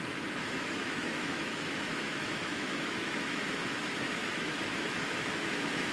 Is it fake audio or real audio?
fake